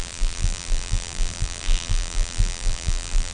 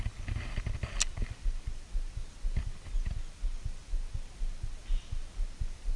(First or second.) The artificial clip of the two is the first